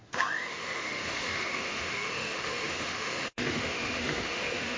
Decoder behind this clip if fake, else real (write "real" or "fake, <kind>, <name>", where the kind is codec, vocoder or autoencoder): fake, autoencoder, DAC-VAE